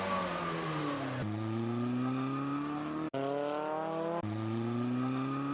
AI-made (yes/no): no